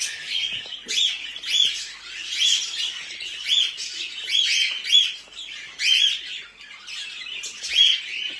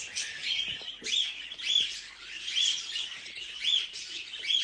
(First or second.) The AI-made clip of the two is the second